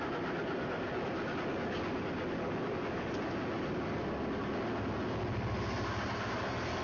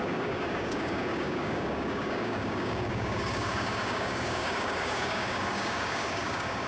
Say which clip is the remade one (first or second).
second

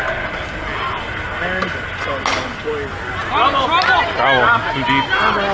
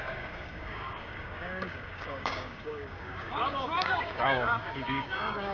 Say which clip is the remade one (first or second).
second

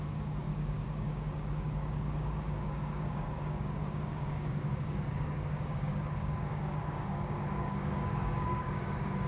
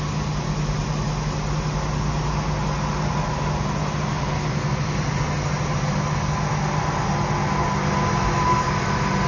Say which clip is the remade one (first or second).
first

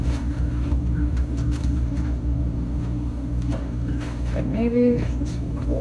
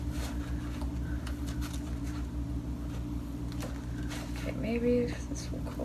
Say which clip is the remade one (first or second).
first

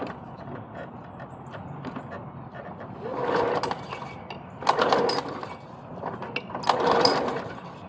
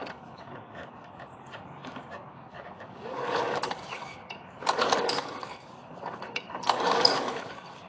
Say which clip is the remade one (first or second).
second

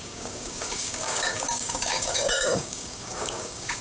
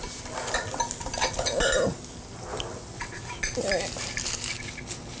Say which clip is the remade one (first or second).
first